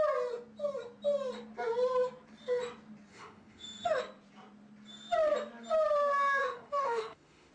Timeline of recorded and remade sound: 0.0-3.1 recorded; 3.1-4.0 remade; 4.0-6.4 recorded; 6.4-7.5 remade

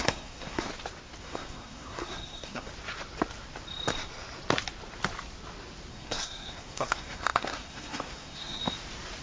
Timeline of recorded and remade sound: 0.0-0.7 remade; 0.7-1.2 recorded; 1.2-2.7 remade; 2.7-5.9 recorded; 5.9-8.6 remade; 8.6-9.2 recorded